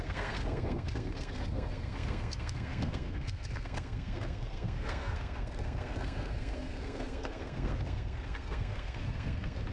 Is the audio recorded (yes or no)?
no